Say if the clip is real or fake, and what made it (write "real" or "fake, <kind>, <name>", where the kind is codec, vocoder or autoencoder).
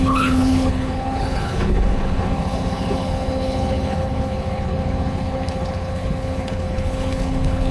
fake, codec, HILCodec